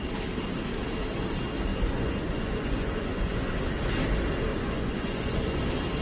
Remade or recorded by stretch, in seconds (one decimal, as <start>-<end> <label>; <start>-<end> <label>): 0.0-1.7 recorded; 1.7-3.5 remade; 3.5-4.5 recorded; 4.5-5.6 remade; 5.6-6.0 recorded